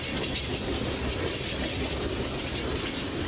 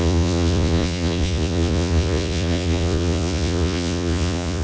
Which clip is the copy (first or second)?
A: second